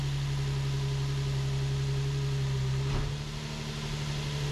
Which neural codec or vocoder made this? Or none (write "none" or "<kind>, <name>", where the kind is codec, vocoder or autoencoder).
none